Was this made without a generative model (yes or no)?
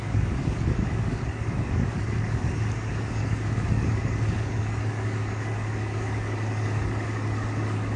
no